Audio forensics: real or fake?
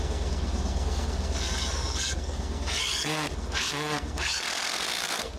fake